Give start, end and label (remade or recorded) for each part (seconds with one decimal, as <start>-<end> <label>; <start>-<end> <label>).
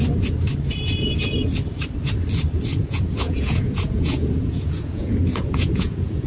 0.0-2.7 recorded; 2.7-6.3 remade